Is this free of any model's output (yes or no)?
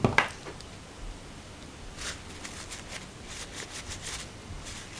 yes